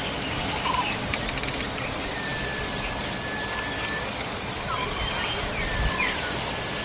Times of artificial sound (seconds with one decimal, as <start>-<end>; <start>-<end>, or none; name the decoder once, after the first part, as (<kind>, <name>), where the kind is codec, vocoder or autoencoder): none